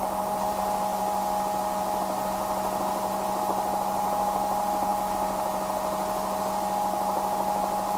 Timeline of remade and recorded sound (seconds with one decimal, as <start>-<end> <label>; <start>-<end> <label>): 0.0-8.0 recorded

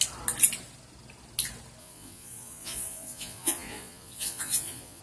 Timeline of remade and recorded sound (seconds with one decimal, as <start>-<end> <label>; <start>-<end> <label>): 0.0-1.8 recorded; 1.8-5.0 remade